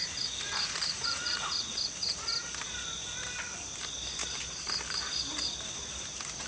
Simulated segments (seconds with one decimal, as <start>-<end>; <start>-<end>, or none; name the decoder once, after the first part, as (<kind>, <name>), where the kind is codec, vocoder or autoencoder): 0.0-2.3 (vocoder, Vocos)